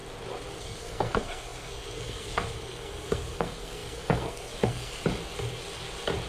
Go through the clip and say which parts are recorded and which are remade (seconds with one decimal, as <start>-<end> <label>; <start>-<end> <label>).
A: 0.0-0.6 recorded; 0.6-5.0 remade; 5.0-6.3 recorded